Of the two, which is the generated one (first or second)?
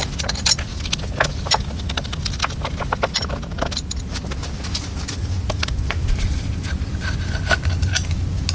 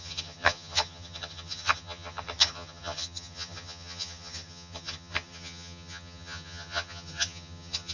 second